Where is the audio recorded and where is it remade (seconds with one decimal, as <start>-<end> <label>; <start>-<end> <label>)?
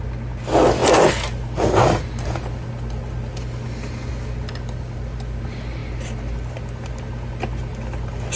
0.0-8.4 recorded